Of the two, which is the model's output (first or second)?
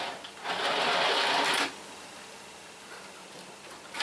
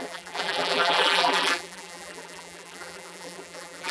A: second